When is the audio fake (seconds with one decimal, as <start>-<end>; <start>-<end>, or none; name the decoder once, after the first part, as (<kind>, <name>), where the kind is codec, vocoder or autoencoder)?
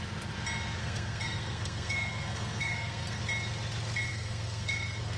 0.8-3.2 (codec, SNAC); 4.1-5.2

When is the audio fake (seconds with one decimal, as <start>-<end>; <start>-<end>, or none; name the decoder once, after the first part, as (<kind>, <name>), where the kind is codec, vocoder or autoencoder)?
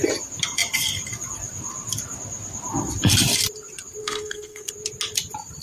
4.0-4.7 (codec, SNAC)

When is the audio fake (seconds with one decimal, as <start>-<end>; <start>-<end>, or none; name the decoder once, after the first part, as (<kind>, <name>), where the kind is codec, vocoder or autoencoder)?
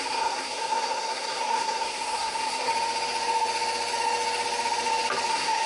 0.0-2.7 (codec, SNAC); 5.3-5.7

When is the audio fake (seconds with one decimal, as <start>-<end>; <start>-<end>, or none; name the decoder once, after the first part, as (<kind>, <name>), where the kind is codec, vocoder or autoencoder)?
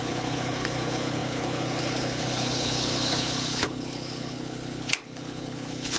0.0-6.0 (codec, HILCodec)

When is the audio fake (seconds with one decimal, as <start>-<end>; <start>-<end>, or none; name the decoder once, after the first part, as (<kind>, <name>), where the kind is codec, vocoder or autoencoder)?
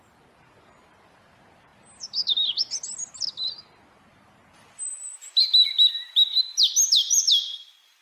none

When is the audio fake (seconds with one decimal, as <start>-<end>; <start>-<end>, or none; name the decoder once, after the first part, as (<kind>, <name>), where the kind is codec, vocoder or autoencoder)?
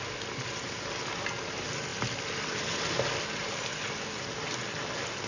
none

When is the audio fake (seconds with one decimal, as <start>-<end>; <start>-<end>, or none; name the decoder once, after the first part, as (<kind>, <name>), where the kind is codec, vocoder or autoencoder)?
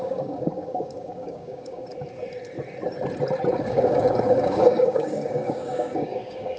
0.0-1.9 (codec, DAC); 3.5-6.6